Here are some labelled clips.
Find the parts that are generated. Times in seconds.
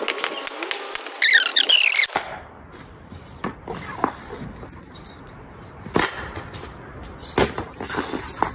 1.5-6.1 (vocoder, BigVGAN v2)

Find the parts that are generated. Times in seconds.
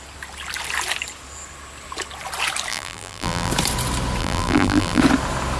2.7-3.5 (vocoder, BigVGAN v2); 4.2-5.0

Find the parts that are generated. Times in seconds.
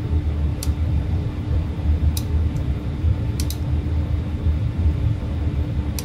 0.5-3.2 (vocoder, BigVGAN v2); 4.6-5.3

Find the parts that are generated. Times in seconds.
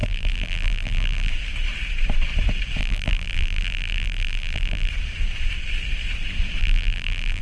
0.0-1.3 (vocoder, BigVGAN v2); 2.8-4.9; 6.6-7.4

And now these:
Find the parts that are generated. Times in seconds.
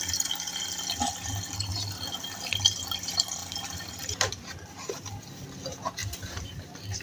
3.4-3.9 (vocoder, BigVGAN v2); 6.0-7.0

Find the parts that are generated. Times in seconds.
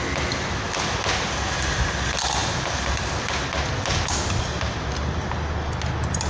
none